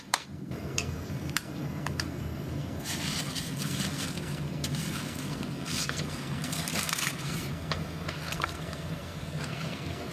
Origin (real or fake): fake